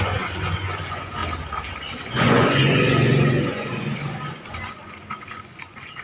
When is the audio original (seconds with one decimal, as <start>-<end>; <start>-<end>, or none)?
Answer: 1.2-1.8